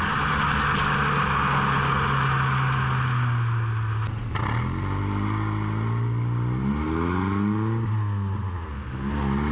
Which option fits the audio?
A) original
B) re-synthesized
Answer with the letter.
A